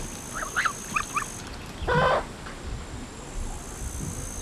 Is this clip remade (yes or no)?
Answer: no